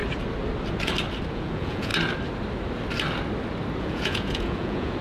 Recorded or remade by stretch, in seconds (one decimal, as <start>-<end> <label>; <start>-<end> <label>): 0.0-1.3 recorded; 1.3-1.9 remade; 1.9-3.8 recorded; 3.8-5.0 remade